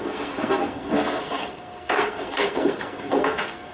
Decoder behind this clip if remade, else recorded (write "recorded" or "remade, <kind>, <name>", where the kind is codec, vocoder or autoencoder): remade, codec, SNAC